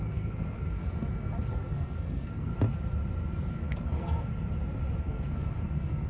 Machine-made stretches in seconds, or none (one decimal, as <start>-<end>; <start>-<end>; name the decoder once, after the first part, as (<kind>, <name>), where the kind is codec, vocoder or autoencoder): 0.0-0.8 (codec, SNAC); 1.5-2.5; 3.5-4.3; 5.0-6.1